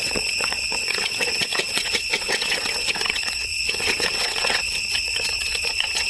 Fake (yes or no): yes